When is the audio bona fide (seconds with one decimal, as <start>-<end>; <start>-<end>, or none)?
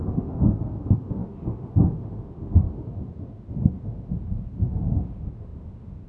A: none